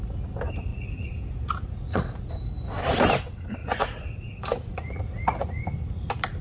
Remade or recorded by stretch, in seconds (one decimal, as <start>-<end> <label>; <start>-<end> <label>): 0.0-0.7 recorded; 0.7-2.3 remade; 2.3-3.6 recorded; 3.6-5.6 remade; 5.6-6.4 recorded